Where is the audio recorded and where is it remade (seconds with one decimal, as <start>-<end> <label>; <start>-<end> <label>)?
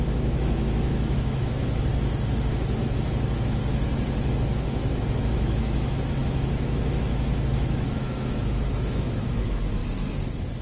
0.0-1.9 remade; 1.9-2.5 recorded; 2.5-3.6 remade; 3.6-4.3 recorded; 4.3-9.8 remade; 9.8-10.6 recorded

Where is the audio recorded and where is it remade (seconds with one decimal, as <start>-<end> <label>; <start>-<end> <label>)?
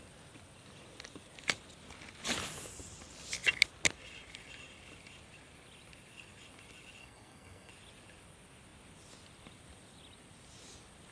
0.0-7.0 recorded; 7.0-7.7 remade; 7.7-11.1 recorded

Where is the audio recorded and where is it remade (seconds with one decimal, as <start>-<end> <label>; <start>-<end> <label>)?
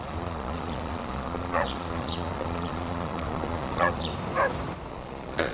0.0-4.1 remade; 4.1-4.9 recorded; 4.9-5.5 remade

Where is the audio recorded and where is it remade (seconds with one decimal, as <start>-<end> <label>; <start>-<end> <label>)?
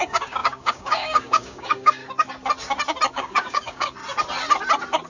0.0-2.0 remade; 2.0-3.1 recorded; 3.1-4.0 remade; 4.0-5.1 recorded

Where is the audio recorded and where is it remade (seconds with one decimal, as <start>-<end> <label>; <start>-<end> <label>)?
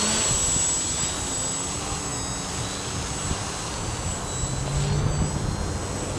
0.0-6.2 recorded